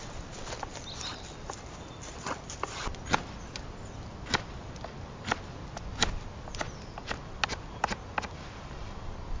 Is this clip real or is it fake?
real